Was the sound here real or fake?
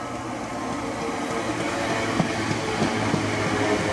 real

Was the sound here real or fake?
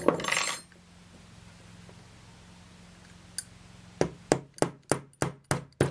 real